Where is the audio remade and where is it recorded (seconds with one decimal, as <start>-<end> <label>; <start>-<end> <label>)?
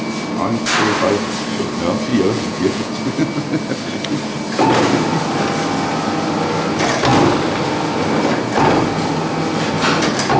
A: 0.0-2.1 recorded; 2.1-2.9 remade; 2.9-10.4 recorded